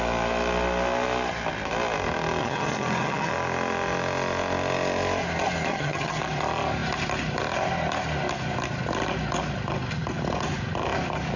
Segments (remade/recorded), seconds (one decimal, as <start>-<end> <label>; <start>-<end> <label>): 0.0-2.4 recorded; 2.4-3.3 remade; 3.3-5.7 recorded; 5.7-6.2 remade; 6.2-11.4 recorded